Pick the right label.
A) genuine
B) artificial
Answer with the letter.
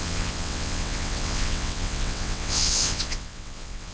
B